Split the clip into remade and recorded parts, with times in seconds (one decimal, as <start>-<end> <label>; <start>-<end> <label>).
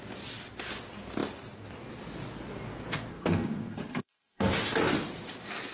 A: 0.0-3.1 recorded; 3.1-4.5 remade; 4.5-5.7 recorded